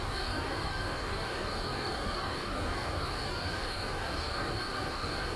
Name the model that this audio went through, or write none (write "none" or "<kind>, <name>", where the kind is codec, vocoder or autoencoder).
codec, DAC